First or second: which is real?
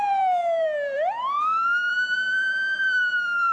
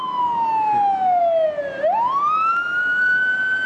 second